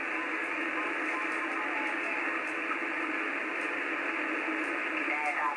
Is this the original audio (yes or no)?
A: yes